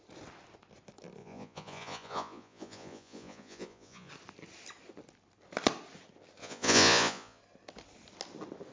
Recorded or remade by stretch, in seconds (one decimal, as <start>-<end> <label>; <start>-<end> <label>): 0.0-1.2 recorded; 1.2-4.1 remade; 4.1-6.4 recorded; 6.4-7.4 remade; 7.4-8.7 recorded

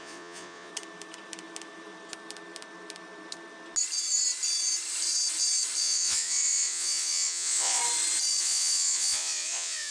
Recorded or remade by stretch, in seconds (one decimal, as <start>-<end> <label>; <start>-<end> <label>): 0.0-0.7 remade; 0.7-5.8 recorded; 5.8-7.8 remade; 7.8-8.4 recorded; 8.4-9.9 remade

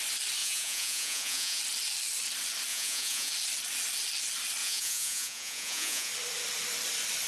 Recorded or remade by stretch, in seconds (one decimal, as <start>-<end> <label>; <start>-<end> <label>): 0.0-0.4 recorded; 0.4-1.6 remade; 1.6-2.7 recorded; 2.7-3.3 remade; 3.3-4.6 recorded; 4.6-6.1 remade; 6.1-7.3 recorded

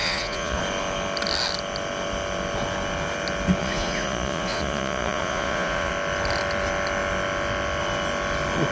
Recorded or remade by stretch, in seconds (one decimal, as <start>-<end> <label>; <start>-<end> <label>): 0.0-0.6 remade; 0.6-3.6 recorded; 3.6-5.9 remade; 5.9-8.7 recorded